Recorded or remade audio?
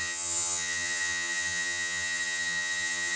remade